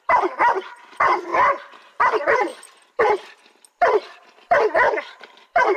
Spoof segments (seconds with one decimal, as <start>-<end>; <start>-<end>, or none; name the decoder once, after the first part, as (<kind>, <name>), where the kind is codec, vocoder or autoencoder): 0.0-1.3 (vocoder, BigVGAN v2); 1.9-2.5; 4.6-5.8